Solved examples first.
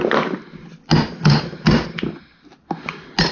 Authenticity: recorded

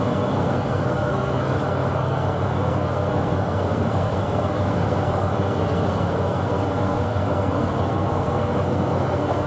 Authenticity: remade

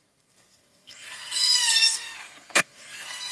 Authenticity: remade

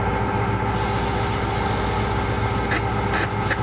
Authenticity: recorded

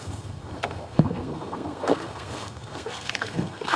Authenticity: remade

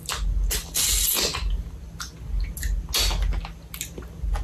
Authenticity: recorded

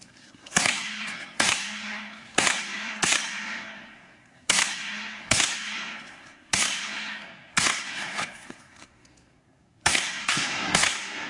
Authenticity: remade